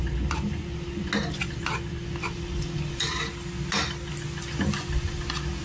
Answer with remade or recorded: recorded